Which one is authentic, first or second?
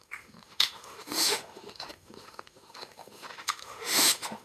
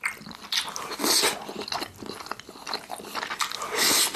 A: second